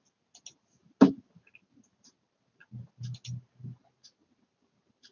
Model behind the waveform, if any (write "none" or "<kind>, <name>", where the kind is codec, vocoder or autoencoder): none